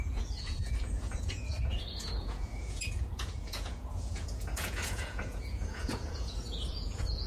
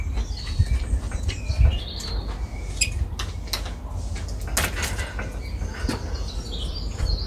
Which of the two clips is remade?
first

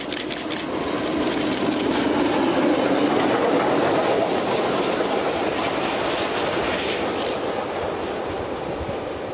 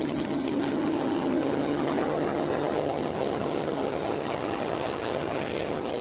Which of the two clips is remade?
second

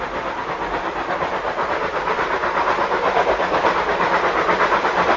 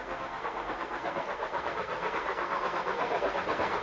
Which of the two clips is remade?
second